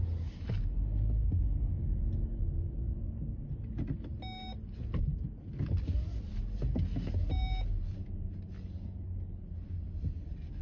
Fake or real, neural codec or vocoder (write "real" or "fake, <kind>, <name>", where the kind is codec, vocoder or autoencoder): real